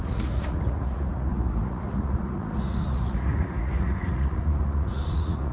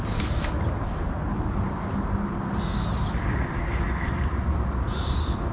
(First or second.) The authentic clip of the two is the second